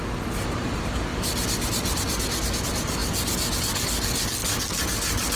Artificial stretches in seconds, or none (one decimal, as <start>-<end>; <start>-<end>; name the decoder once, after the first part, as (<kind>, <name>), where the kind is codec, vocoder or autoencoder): none

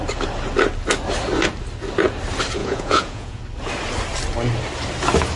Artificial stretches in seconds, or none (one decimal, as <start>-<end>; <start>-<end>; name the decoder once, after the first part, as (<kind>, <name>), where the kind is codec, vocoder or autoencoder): 2.6-3.4 (vocoder, Vocos)